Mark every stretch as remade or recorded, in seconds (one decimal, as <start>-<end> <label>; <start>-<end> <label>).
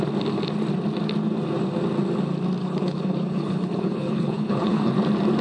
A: 0.0-2.6 recorded; 2.6-4.9 remade; 4.9-5.4 recorded